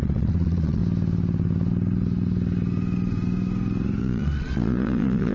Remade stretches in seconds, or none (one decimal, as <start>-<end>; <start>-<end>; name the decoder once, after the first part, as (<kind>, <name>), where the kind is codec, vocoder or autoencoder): 0.0-0.8 (vocoder, Vocos); 4.0-5.3